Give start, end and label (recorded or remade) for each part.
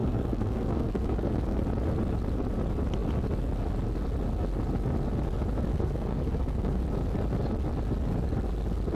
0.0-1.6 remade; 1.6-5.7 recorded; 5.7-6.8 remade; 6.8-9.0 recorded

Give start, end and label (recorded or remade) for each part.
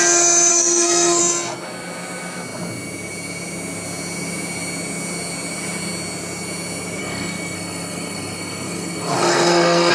0.0-0.5 recorded; 0.5-1.2 remade; 1.2-7.0 recorded; 7.0-9.9 remade